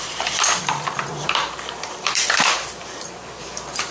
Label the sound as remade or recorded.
remade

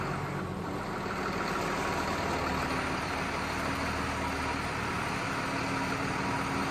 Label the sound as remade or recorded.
recorded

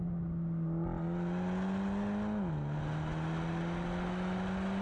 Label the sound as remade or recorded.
recorded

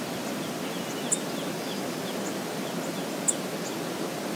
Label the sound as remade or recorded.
recorded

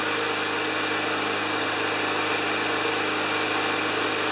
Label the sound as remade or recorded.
recorded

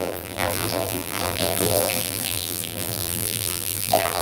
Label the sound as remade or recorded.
remade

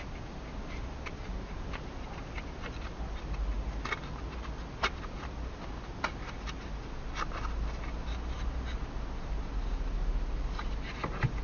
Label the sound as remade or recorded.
recorded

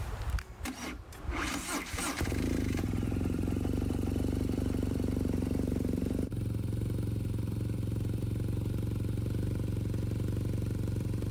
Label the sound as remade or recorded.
remade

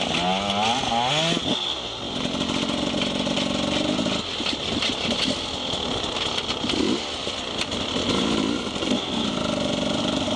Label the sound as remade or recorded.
recorded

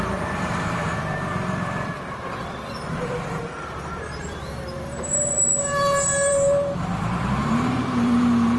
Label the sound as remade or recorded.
remade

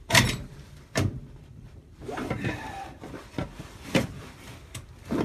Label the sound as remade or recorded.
remade